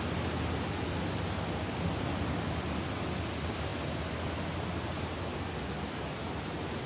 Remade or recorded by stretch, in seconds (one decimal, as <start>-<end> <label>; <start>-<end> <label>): 0.0-6.9 recorded